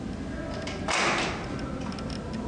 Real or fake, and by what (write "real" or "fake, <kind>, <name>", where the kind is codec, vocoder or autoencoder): real